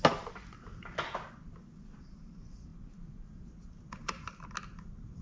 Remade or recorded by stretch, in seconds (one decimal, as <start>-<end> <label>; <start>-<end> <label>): 0.0-5.2 recorded